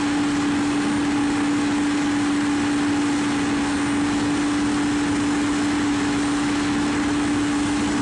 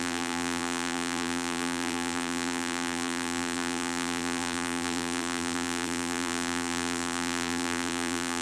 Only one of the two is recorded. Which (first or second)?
first